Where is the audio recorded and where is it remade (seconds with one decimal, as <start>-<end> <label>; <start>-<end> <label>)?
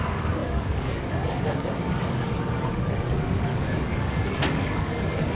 0.0-5.3 remade